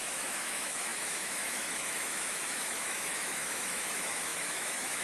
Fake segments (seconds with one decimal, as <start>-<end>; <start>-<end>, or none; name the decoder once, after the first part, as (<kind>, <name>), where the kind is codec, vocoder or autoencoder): 0.0-5.0 (autoencoder, DAC-VAE)